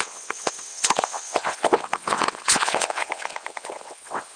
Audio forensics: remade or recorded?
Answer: remade